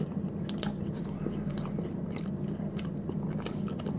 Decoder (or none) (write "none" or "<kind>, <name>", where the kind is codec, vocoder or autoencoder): none